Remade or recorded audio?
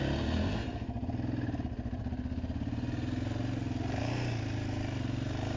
recorded